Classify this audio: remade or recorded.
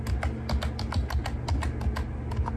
recorded